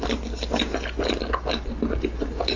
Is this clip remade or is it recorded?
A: recorded